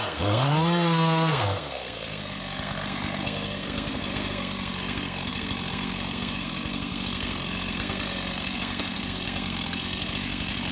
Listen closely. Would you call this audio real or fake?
fake